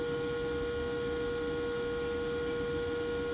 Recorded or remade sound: recorded